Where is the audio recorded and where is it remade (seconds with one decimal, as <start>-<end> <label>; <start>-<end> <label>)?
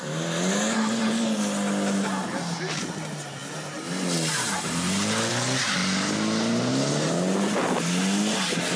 0.0-8.8 recorded